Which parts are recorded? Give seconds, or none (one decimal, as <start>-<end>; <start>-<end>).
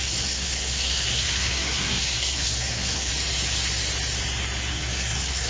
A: 3.1-4.7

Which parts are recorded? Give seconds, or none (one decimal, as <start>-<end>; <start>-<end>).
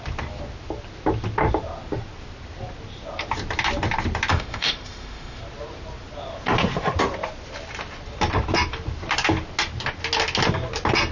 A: 0.0-4.3; 5.4-11.1